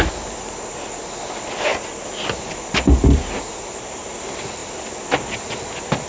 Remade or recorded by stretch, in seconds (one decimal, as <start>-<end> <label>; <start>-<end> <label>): 0.0-6.1 recorded